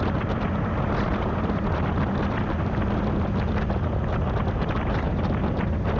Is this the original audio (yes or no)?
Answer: yes